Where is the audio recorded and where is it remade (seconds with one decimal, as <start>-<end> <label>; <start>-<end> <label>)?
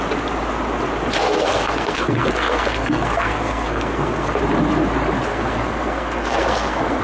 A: 0.0-1.2 recorded; 1.2-4.4 remade; 4.4-5.3 recorded; 5.3-7.0 remade